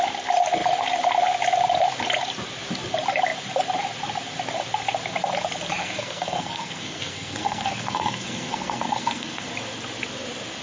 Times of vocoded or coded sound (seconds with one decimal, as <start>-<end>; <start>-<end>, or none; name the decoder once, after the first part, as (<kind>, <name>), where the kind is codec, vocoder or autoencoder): 5.8-9.5 (codec, SNAC)